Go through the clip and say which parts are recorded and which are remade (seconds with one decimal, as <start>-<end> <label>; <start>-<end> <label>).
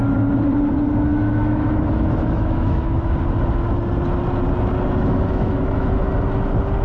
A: 0.0-1.1 recorded; 1.1-3.2 remade; 3.2-5.0 recorded; 5.0-6.1 remade; 6.1-6.8 recorded